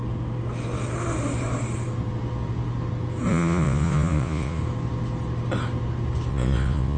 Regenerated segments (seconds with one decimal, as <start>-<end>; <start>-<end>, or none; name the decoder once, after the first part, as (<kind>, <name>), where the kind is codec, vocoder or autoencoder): 3.3-4.6 (vocoder, Vocos); 6.3-7.0

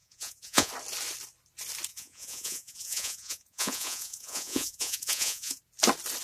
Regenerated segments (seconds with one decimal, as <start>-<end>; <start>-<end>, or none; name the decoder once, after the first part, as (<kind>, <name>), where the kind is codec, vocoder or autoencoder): 0.0-0.7 (vocoder, Vocos); 1.9-5.6

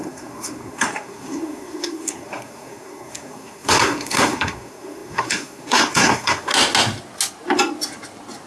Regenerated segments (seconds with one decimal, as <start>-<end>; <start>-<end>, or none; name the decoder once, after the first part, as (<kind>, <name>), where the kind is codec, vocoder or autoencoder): 0.0-6.5 (codec, SNAC)

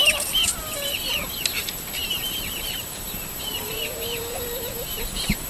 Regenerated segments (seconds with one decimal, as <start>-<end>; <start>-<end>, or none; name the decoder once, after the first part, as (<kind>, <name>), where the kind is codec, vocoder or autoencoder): 0.4-1.3 (vocoder, BigVGAN v2); 2.0-5.5

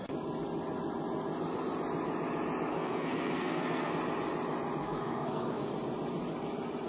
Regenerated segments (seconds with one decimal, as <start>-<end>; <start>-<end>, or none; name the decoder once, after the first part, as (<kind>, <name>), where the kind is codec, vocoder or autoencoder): 2.7-3.9 (codec, SNAC); 4.8-5.7

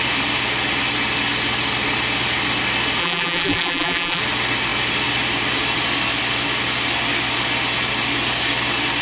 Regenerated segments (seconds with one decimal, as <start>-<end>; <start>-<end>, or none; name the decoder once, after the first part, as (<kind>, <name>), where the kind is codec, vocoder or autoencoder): 3.0-4.2 (vocoder, BigVGAN v2)

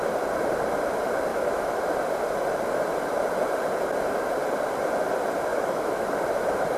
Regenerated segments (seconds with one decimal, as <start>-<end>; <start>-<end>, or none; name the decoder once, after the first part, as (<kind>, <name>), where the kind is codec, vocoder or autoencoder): 1.3-1.8 (autoencoder, DAC-VAE); 5.5-6.1

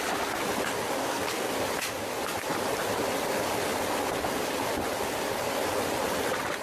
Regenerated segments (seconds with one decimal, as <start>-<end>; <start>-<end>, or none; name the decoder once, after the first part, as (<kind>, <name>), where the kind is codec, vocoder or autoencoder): 1.0-1.5 (codec, SNAC)